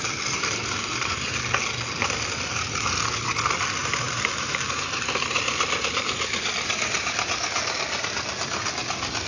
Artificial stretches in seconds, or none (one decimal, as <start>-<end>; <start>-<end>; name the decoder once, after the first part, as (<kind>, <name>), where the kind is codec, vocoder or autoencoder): 0.0-1.3 (vocoder, BigVGAN v2); 3.8-7.6